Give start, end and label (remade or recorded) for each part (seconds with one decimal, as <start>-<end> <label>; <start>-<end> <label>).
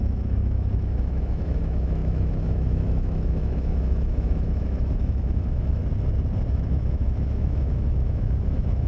0.0-5.8 remade; 5.8-6.5 recorded; 6.5-8.9 remade